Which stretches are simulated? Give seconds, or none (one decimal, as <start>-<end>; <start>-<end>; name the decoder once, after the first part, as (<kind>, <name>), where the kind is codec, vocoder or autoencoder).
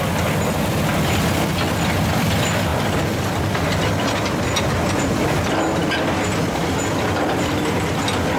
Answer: 2.7-3.6 (vocoder, BigVGAN v2)